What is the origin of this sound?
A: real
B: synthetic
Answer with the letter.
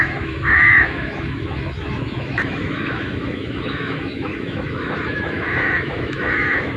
B